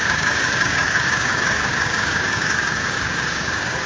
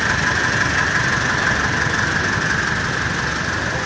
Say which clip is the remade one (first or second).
first